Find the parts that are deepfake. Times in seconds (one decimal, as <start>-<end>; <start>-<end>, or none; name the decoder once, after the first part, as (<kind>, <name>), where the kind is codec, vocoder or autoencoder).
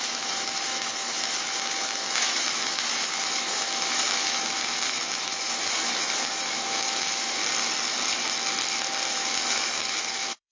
0.0-7.4 (autoencoder, DAC-VAE); 9.1-10.5